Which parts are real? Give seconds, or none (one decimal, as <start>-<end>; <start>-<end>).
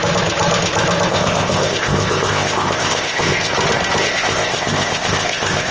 0.0-1.1; 3.5-4.0